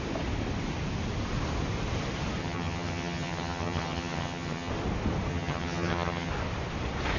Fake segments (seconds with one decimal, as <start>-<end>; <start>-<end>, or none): 2.4-4.7; 5.3-6.3